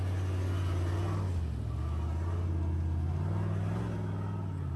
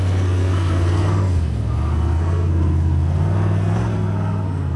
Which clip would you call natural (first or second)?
first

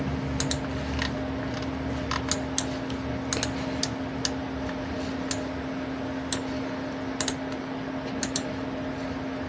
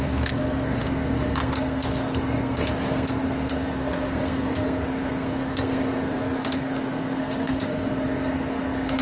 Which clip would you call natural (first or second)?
first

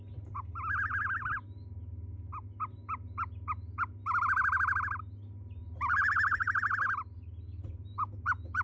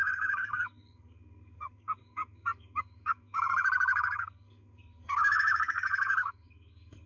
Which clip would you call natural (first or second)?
first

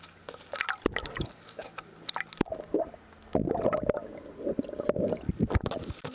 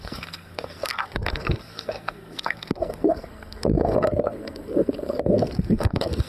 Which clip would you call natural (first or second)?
first